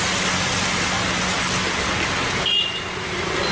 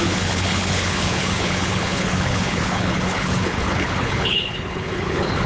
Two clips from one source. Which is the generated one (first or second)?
second